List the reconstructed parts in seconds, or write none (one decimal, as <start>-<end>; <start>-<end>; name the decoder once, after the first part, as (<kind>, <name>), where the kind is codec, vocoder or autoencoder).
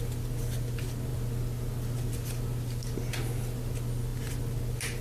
none